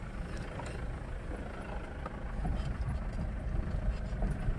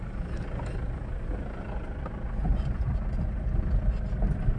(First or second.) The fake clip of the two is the first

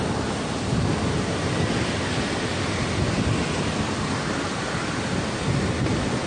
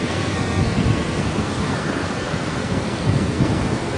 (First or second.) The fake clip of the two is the second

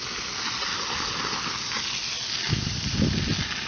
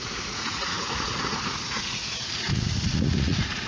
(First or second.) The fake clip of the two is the second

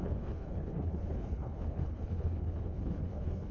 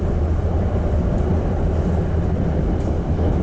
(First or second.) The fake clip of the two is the first